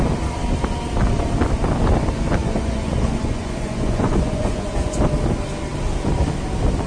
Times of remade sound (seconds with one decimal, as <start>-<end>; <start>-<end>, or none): 2.4-5.0